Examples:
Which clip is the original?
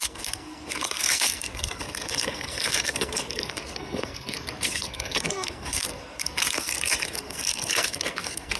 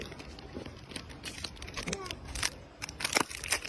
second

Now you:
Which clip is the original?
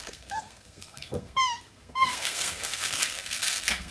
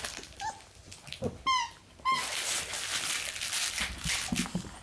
second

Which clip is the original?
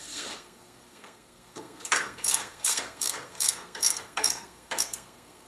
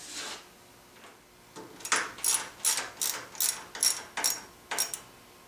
second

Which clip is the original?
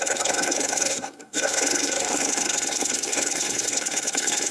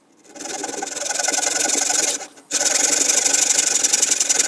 second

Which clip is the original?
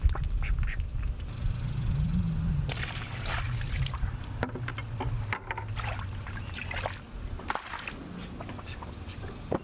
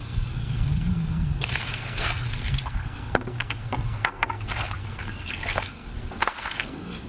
first